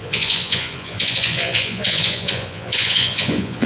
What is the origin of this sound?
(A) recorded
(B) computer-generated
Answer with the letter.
B